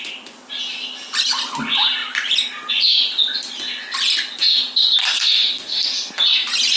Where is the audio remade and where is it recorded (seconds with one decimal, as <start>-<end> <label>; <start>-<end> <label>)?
0.0-5.0 recorded; 5.0-6.1 remade; 6.1-6.8 recorded